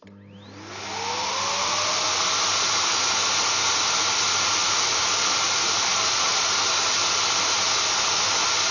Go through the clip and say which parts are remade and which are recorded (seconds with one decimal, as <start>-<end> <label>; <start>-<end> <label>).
0.0-5.9 recorded; 5.9-6.5 remade; 6.5-8.7 recorded